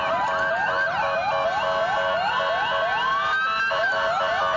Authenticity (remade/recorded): recorded